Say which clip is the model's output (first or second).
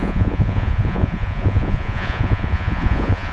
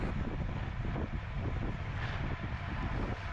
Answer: first